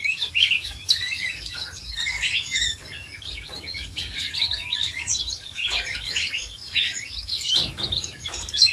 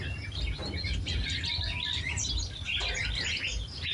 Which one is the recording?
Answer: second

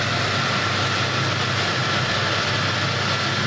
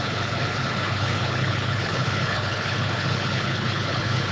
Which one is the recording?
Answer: first